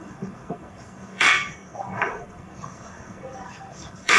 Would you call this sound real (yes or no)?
no